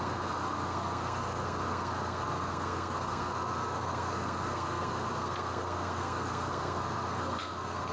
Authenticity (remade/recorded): remade